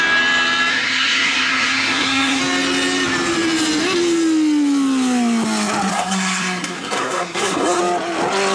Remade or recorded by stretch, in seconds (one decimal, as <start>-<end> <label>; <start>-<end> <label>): 0.0-0.7 recorded; 0.7-2.4 remade; 2.4-5.9 recorded; 5.9-7.8 remade; 7.8-8.5 recorded